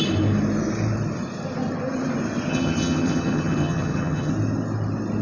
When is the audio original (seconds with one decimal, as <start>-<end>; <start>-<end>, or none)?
0.0-2.5; 4.3-5.2